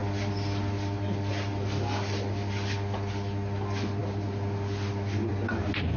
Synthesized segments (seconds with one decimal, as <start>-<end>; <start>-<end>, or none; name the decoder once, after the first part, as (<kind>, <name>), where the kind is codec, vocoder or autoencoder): none